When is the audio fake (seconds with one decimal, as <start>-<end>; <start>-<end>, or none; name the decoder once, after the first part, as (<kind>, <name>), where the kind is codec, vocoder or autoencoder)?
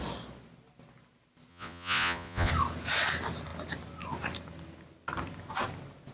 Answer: 1.5-2.5 (vocoder, Vocos)